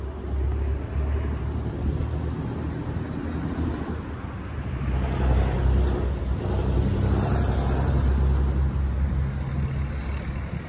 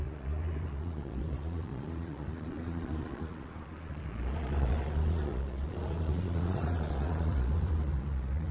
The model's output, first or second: second